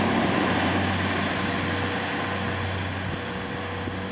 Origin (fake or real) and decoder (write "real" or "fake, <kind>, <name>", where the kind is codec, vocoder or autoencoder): real